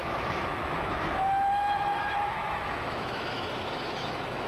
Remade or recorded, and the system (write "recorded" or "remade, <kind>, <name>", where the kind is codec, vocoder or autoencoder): remade, autoencoder, DAC-VAE